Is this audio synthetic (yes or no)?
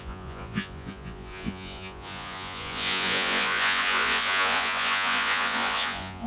yes